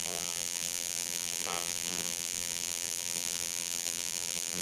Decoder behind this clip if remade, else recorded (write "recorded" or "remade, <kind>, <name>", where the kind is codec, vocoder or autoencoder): remade, vocoder, BigVGAN v2